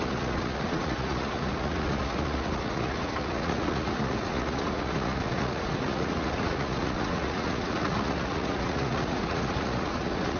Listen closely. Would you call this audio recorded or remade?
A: remade